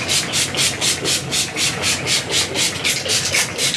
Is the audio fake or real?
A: real